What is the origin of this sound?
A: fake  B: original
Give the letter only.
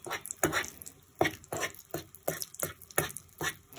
B